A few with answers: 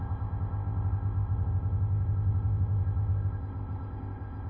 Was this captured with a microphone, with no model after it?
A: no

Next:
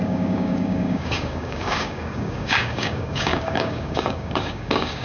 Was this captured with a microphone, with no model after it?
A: no